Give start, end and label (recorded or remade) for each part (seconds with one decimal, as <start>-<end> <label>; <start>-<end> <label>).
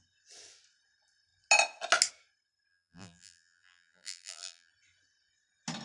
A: 0.0-2.7 recorded; 2.7-4.7 remade; 4.7-5.8 recorded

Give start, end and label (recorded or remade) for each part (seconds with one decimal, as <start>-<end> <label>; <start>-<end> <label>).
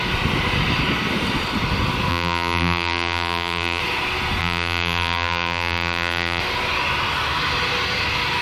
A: 0.0-2.1 recorded; 2.1-3.8 remade; 3.8-4.4 recorded; 4.4-6.4 remade; 6.4-8.4 recorded